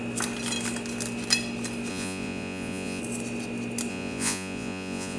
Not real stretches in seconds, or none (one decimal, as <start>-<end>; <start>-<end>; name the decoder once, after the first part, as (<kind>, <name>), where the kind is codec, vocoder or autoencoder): 1.9-3.0 (vocoder, Vocos); 3.9-5.2